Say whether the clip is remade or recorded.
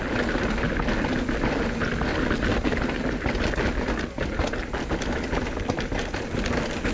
recorded